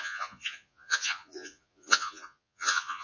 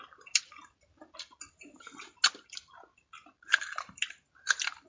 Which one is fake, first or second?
first